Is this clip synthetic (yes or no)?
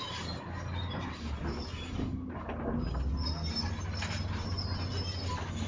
no